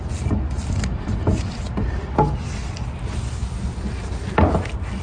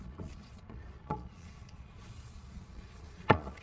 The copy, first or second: second